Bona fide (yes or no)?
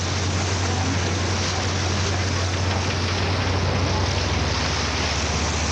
yes